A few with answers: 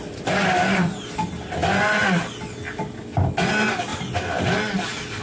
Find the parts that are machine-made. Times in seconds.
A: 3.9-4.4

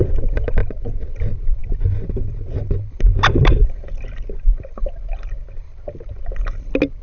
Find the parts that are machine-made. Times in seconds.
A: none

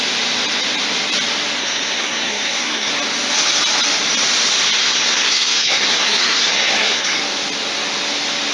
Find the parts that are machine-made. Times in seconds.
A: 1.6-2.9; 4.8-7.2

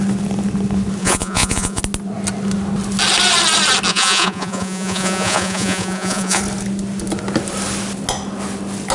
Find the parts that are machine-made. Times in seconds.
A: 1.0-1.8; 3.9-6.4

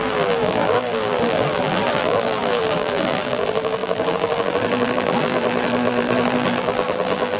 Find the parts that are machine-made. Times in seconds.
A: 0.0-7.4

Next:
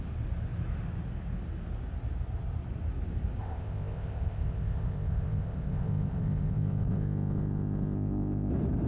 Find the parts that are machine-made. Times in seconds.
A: 3.4-8.5